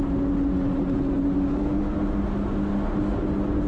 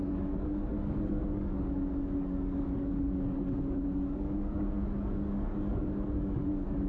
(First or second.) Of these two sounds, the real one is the first